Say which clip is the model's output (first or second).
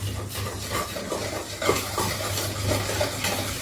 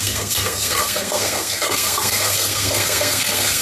second